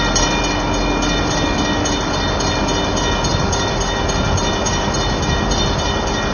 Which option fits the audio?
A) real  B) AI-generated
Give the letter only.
A